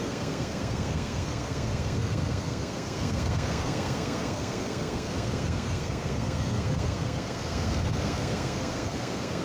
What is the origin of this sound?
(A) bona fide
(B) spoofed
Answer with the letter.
B